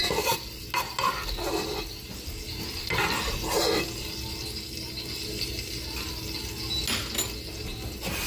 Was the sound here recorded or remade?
recorded